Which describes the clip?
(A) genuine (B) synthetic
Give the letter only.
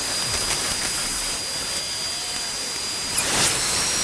A